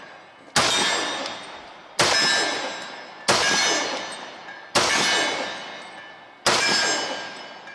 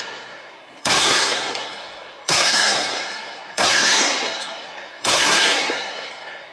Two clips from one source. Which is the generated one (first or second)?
second